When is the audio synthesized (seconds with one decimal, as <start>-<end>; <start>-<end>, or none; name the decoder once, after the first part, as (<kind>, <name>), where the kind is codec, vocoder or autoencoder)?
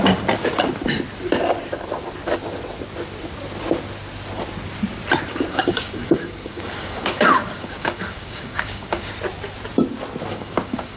5.5-9.1 (codec, DAC); 10.3-11.0